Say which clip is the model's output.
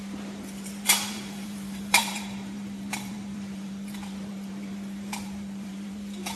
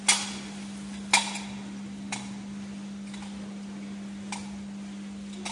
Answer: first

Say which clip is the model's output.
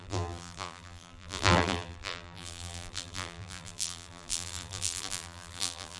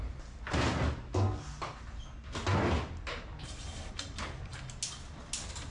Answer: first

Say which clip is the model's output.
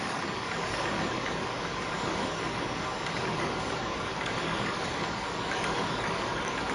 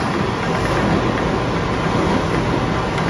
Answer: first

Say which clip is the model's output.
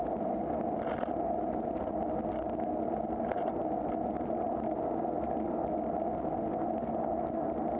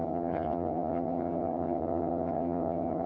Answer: second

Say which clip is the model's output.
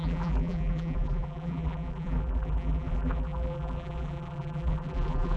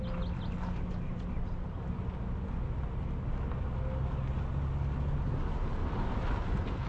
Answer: first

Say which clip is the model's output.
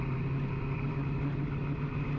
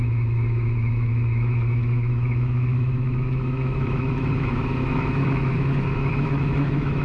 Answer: second